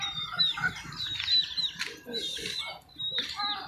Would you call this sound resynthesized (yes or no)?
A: no